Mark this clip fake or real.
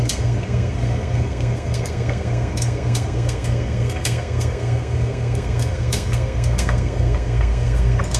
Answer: fake